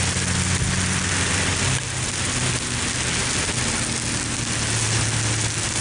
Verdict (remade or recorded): recorded